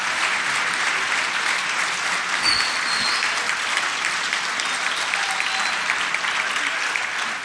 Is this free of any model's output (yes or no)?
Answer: yes